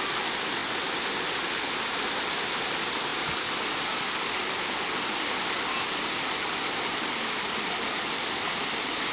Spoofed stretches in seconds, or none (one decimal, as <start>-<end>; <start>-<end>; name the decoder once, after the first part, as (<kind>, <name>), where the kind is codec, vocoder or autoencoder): 3.1-4.7 (vocoder, BigVGAN v2)